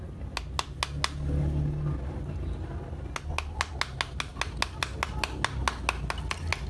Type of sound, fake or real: real